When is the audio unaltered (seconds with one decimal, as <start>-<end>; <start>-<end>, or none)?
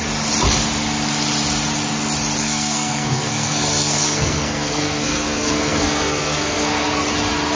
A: 0.0-2.4; 7.0-7.6